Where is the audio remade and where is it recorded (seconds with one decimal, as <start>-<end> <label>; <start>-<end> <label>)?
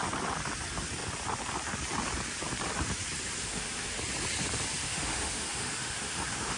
0.0-3.4 recorded; 3.4-3.9 remade; 3.9-4.8 recorded; 4.8-6.6 remade